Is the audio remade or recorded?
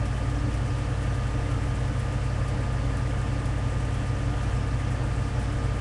recorded